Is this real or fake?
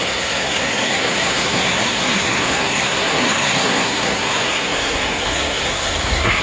fake